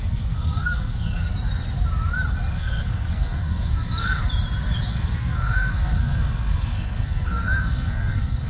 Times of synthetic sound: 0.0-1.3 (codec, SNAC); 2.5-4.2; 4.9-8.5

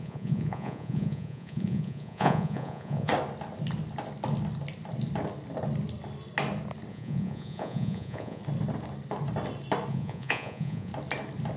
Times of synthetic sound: 0.0-3.1 (vocoder, Vocos); 6.9-8.4; 9.9-10.9

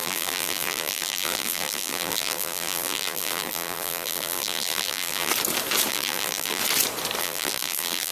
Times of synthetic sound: 0.0-5.3 (vocoder, BigVGAN v2); 5.9-6.6; 7.2-8.1

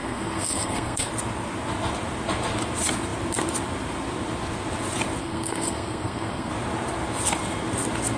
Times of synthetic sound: 0.0-1.1 (codec, SNAC); 5.2-6.5

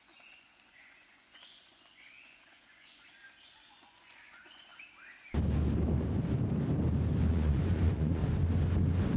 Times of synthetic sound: 0.0-4.7 (vocoder, Vocos); 7.3-8.2

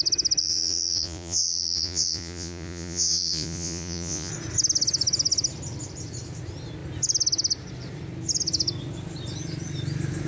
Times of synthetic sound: 0.4-4.3 (vocoder, Vocos)